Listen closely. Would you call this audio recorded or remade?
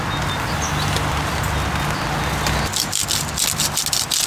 recorded